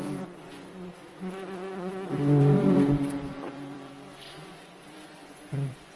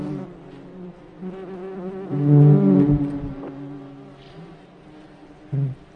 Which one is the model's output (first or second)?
first